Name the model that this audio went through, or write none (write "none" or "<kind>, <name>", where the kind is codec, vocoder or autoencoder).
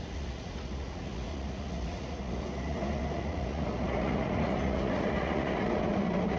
vocoder, Vocos